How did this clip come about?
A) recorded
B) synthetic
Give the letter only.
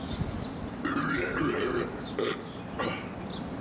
A